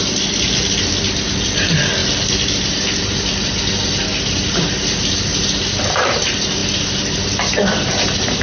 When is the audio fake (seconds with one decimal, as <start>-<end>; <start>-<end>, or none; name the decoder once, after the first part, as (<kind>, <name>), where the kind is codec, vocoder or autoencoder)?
2.0-3.5 (vocoder, BigVGAN v2)